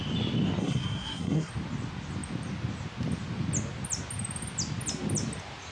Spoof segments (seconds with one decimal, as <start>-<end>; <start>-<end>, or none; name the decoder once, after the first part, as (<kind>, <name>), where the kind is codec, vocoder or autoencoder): 0.6-1.5 (codec, SNAC)